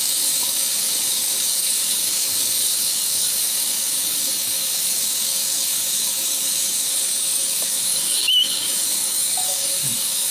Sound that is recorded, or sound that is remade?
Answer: remade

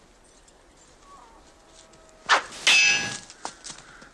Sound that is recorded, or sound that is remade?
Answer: recorded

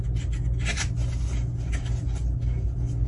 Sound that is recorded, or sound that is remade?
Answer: recorded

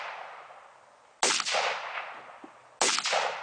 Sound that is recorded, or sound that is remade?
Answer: recorded